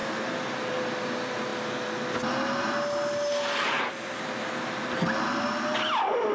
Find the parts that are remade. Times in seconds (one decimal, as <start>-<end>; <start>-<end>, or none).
none